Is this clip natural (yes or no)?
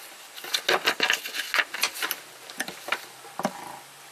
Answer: yes